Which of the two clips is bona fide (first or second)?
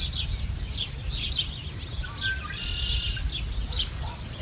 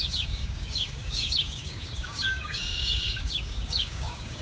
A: first